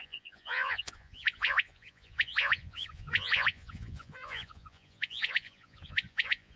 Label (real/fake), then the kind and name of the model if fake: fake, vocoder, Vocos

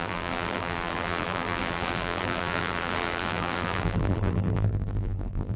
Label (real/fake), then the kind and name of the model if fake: fake, vocoder, BigVGAN v2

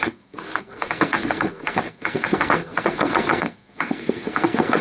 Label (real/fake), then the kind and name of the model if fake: fake, codec, SNAC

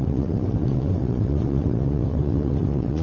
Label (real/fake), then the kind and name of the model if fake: fake, vocoder, WaveNeXt